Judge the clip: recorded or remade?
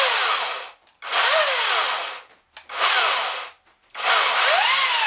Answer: recorded